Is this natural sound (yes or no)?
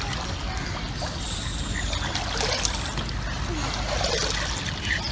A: yes